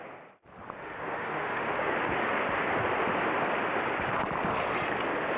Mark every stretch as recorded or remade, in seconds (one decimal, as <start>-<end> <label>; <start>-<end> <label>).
0.0-0.8 recorded; 0.8-1.9 remade; 1.9-5.4 recorded